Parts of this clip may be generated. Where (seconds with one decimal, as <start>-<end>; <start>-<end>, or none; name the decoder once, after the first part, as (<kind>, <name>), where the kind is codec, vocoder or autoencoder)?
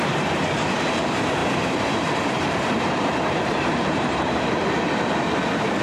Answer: 1.4-4.6 (vocoder, BigVGAN v2)